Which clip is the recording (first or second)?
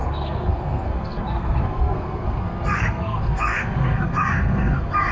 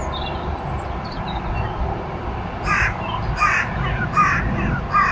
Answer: second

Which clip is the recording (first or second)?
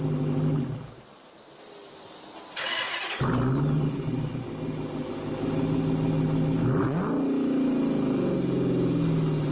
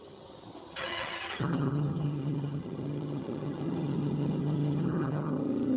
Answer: first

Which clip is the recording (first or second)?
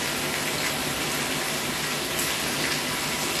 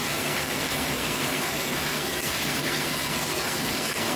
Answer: first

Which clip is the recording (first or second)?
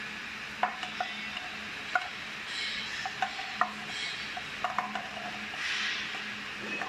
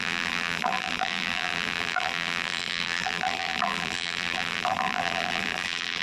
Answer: first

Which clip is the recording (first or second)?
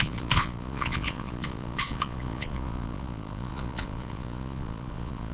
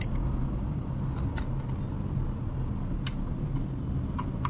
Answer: second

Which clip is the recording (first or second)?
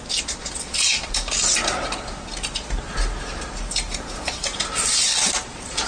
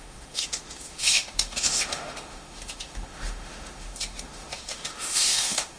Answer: first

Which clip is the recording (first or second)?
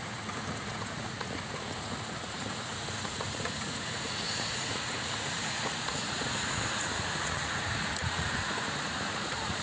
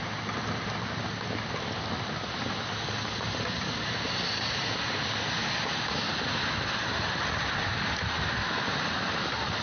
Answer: second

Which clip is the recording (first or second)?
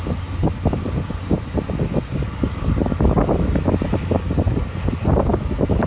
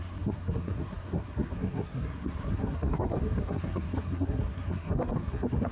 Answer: first